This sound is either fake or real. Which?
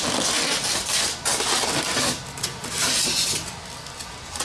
real